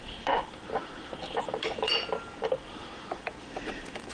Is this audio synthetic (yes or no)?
yes